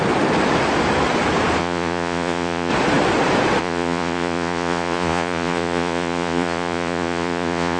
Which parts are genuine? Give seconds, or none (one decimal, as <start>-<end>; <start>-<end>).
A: 0.0-1.6; 2.7-3.6